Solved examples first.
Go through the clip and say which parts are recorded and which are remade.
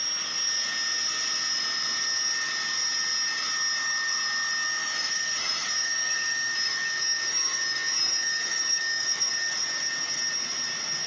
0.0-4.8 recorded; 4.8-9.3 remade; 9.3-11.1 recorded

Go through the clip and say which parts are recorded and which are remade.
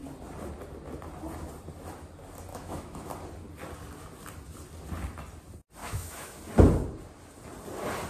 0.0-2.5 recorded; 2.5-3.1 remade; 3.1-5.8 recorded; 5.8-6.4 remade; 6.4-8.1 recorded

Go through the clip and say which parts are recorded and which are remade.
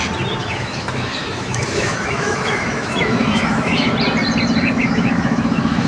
0.0-0.4 recorded; 0.4-3.9 remade; 3.9-4.8 recorded; 4.8-5.9 remade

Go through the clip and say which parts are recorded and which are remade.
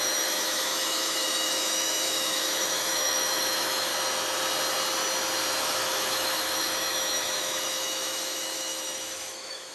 0.0-3.9 remade; 3.9-5.6 recorded; 5.6-9.7 remade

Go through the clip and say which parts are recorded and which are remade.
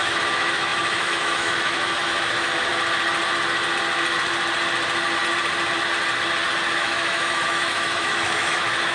0.0-2.7 remade; 2.7-6.7 recorded; 6.7-8.9 remade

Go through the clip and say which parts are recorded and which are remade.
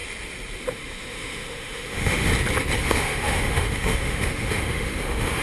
0.0-0.6 recorded; 0.6-2.3 remade; 2.3-2.8 recorded; 2.8-5.4 remade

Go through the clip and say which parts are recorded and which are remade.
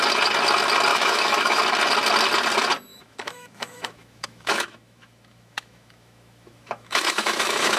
0.0-0.9 recorded; 0.9-1.6 remade; 1.6-2.9 recorded; 2.9-7.8 remade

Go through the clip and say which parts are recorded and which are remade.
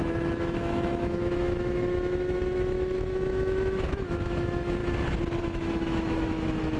0.0-4.8 remade; 4.8-5.4 recorded; 5.4-6.8 remade